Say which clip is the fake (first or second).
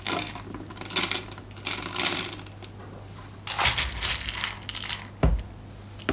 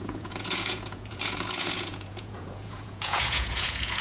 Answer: second